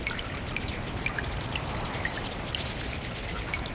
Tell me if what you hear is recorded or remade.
remade